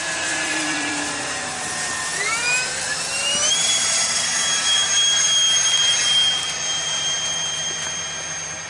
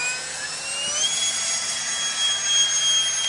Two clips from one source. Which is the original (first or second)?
second